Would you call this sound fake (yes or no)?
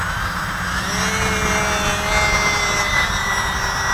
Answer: no